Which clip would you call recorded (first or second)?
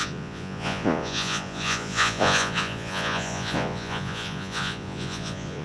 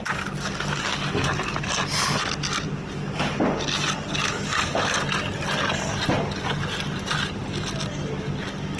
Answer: second